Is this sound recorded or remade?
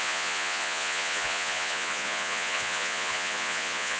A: remade